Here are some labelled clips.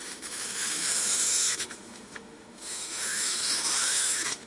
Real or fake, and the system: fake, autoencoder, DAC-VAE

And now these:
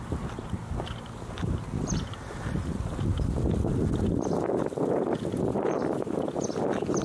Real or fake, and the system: real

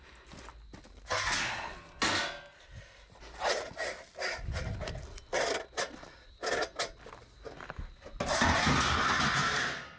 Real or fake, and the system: real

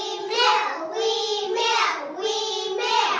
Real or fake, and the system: real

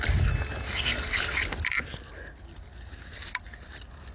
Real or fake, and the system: real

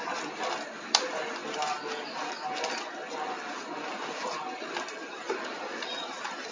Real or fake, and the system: real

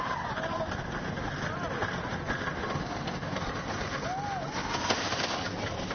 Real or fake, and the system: real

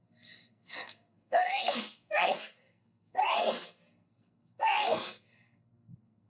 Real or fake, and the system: fake, codec, SNAC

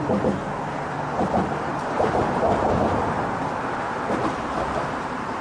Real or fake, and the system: real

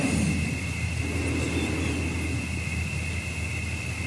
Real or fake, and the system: real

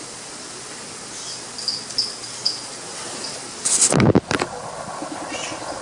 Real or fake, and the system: real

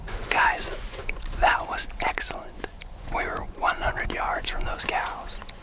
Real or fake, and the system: fake, vocoder, Vocos